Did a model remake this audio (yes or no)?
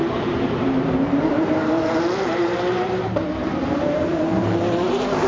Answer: yes